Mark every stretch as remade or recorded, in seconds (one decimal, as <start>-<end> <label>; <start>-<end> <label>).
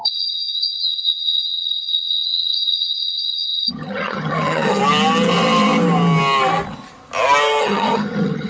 0.0-4.8 remade; 4.8-7.6 recorded; 7.6-8.5 remade